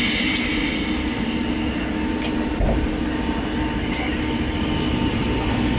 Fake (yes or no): no